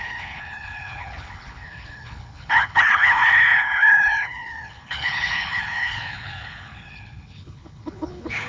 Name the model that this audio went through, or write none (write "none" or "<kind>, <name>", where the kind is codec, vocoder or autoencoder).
codec, HILCodec